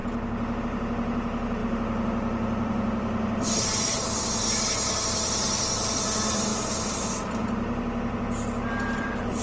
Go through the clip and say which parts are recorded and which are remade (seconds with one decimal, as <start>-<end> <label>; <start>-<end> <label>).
0.0-0.6 recorded; 0.6-9.4 remade